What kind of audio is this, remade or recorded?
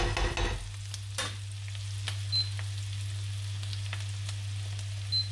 recorded